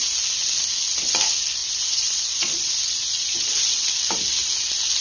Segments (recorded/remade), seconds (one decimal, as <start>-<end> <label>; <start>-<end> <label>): 0.0-1.6 recorded; 1.6-3.8 remade; 3.8-5.0 recorded